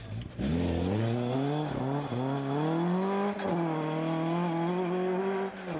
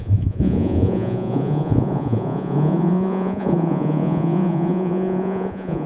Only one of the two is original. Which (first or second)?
first